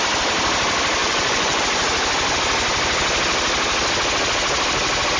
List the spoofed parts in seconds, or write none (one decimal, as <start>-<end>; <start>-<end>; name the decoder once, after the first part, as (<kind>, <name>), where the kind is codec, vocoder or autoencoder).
1.0-1.6 (vocoder, Vocos)